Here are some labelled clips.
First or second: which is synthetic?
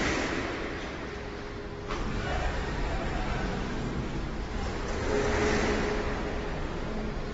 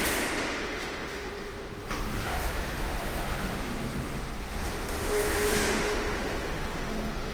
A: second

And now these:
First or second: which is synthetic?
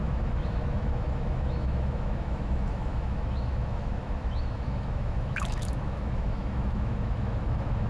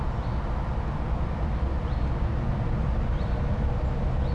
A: first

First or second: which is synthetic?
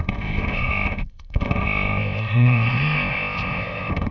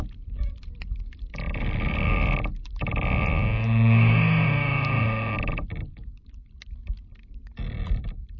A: first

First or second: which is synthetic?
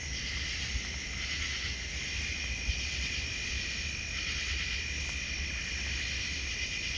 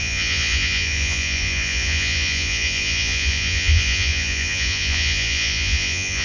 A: second